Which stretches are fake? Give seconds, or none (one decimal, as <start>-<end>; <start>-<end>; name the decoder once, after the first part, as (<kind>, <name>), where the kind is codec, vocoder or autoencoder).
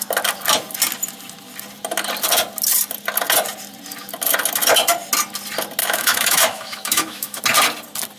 5.8-7.4 (autoencoder, DAC-VAE)